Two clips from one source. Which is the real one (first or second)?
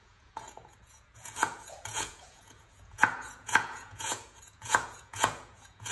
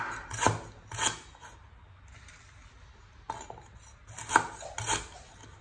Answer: second